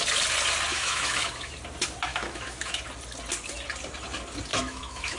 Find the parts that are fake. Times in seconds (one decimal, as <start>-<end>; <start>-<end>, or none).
0.7-1.5; 2.1-2.8; 4.5-5.2